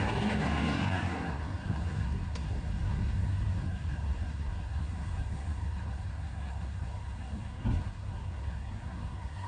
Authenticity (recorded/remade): remade